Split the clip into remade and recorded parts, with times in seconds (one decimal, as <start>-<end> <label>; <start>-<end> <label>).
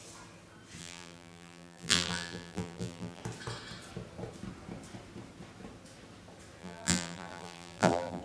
0.0-0.8 recorded; 0.8-3.2 remade; 3.2-6.6 recorded; 6.6-8.2 remade